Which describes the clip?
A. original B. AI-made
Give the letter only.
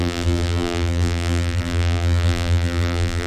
B